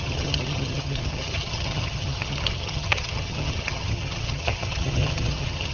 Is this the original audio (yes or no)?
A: no